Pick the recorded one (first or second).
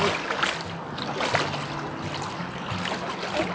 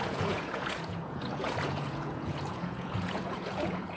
first